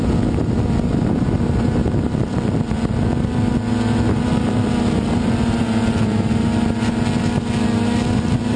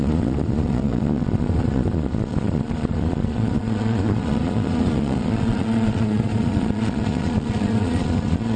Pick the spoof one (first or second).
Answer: second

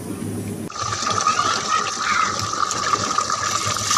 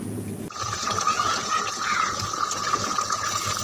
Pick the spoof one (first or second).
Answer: second